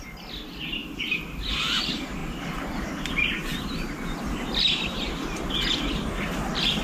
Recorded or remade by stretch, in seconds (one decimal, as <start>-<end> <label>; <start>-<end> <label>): 0.0-0.8 remade; 0.8-1.8 recorded; 1.8-2.2 remade; 2.2-3.1 recorded; 3.1-3.5 remade; 3.5-4.7 recorded; 4.7-6.8 remade